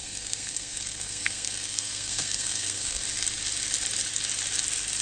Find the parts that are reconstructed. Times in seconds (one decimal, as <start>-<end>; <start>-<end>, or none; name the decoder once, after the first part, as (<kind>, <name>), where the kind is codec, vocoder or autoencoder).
0.0-3.0 (codec, SNAC)

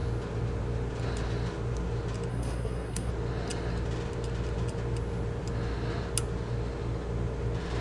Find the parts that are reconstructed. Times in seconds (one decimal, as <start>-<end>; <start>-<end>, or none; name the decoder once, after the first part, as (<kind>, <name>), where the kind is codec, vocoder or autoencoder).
2.3-3.1 (codec, SNAC)

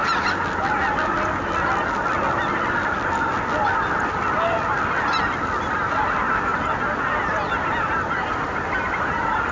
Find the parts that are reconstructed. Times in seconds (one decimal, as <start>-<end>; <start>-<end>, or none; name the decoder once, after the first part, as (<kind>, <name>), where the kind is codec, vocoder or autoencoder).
none

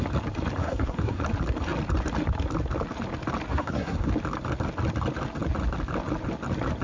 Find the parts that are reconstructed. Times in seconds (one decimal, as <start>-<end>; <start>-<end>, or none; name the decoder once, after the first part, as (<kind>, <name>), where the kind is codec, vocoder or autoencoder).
0.6-1.2 (codec, SNAC); 3.5-4.1

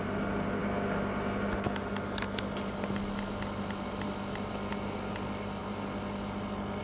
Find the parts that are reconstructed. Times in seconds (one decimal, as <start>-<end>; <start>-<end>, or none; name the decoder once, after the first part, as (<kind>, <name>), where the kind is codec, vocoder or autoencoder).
none

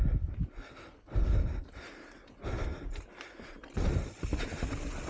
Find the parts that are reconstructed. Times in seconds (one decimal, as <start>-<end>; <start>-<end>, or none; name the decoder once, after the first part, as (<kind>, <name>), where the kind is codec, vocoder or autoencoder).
none

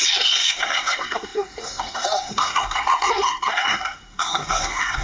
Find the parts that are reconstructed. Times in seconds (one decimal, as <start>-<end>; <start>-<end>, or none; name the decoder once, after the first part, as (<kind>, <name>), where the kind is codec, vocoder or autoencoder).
0.0-5.0 (codec, SNAC)